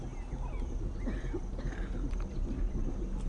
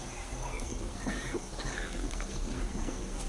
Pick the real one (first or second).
first